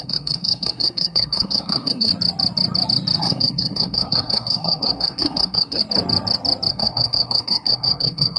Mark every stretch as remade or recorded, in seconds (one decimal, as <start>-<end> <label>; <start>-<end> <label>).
0.0-2.1 remade; 2.1-3.2 recorded; 3.2-5.8 remade; 5.8-6.7 recorded; 6.7-8.4 remade